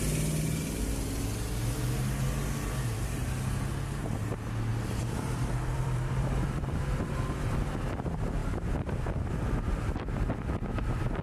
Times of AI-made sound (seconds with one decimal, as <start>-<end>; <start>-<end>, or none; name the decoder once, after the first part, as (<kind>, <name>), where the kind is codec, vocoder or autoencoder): 4.7-7.1 (vocoder, BigVGAN v2)

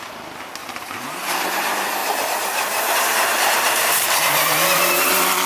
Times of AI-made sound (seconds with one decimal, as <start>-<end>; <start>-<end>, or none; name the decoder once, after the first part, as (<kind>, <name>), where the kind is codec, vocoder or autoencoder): 0.6-1.4 (vocoder, BigVGAN v2); 2.0-4.9

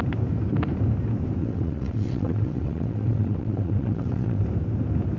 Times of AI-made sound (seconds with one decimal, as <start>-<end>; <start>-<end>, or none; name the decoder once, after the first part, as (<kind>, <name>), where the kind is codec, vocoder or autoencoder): 1.4-4.4 (vocoder, WaveNeXt)

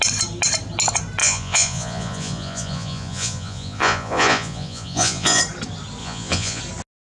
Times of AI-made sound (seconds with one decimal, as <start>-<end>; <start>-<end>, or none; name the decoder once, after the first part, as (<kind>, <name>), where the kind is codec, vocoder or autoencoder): 1.2-5.4 (vocoder, Vocos); 6.0-6.6

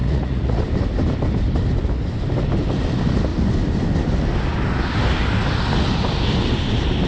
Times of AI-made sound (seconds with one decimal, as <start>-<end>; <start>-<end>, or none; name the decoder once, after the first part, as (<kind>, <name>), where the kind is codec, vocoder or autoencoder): 0.0-0.6 (vocoder, Vocos)

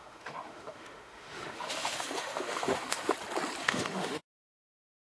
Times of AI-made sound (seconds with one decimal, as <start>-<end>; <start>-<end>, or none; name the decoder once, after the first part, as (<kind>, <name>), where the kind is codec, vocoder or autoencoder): 0.0-3.1 (autoencoder, DAC-VAE); 3.6-4.2

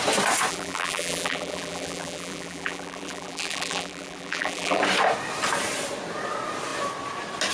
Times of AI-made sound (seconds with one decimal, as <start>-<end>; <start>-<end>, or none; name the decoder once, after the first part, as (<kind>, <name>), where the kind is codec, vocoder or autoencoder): 0.5-4.8 (vocoder, BigVGAN v2)

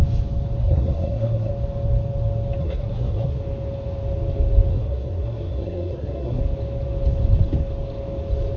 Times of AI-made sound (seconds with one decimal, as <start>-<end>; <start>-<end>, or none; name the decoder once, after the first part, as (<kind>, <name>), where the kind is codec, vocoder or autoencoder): 0.6-1.5 (codec, SNAC); 2.6-3.4; 4.7-6.4